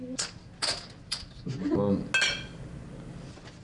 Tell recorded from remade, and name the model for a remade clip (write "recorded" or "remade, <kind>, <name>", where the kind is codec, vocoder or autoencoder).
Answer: recorded